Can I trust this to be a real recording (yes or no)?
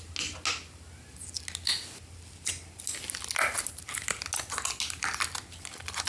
yes